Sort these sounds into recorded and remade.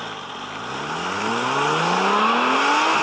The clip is recorded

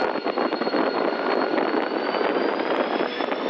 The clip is recorded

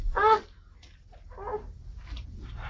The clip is recorded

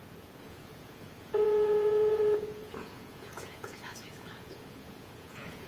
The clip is remade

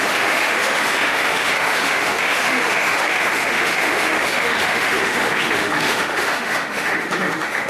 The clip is remade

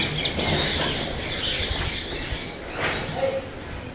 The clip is recorded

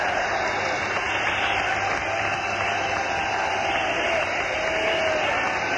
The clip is recorded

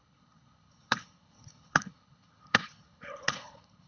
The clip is remade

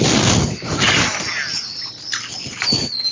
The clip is recorded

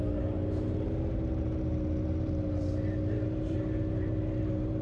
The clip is recorded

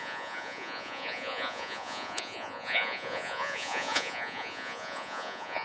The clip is remade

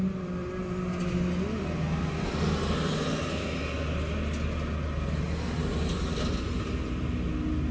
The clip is recorded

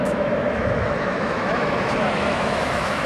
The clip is remade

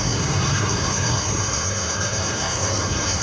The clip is remade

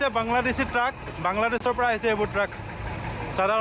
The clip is recorded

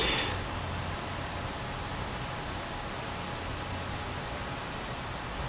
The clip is recorded